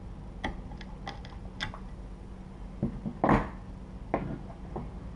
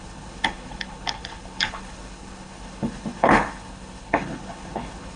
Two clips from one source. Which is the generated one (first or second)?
second